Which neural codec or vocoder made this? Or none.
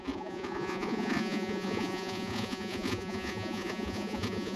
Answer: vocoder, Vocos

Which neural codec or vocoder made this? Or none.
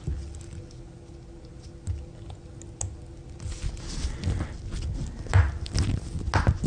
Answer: none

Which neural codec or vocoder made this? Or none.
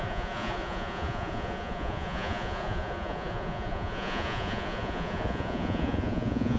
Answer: vocoder, Vocos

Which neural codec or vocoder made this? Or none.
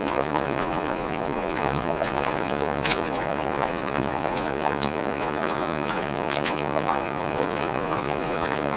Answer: vocoder, Vocos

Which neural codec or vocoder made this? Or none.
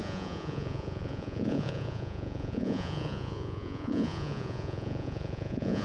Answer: vocoder, Vocos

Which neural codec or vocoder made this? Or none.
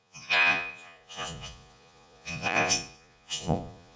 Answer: vocoder, Vocos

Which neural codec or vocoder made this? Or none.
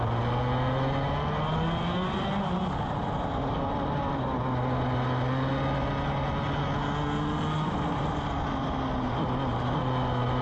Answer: none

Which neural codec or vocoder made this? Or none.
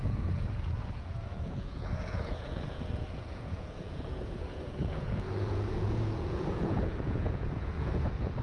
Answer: vocoder, Vocos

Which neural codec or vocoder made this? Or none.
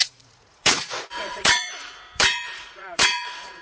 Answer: vocoder, Vocos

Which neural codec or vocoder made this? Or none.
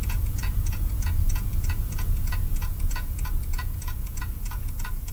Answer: vocoder, Vocos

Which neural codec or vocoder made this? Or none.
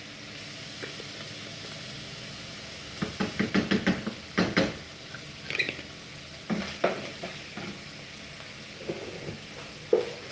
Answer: none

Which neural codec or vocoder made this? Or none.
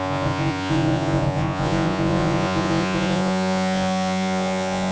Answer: vocoder, Vocos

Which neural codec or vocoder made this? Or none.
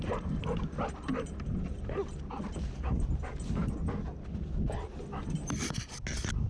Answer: none